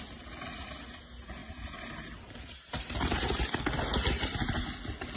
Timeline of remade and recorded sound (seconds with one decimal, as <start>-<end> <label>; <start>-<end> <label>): 0.0-1.4 recorded; 1.4-3.6 remade; 3.6-5.2 recorded